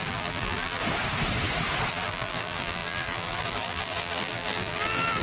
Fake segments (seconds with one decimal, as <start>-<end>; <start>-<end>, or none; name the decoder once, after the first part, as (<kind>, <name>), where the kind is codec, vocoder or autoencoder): 0.0-0.8 (vocoder, BigVGAN v2); 1.9-5.2